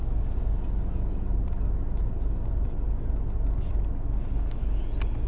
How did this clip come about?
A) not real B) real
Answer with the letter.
B